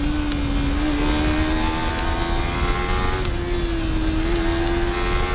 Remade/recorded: recorded